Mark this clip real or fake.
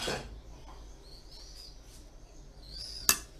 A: real